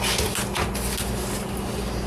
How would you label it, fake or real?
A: real